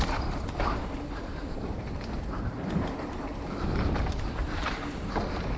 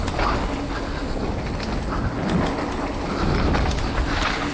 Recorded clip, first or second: second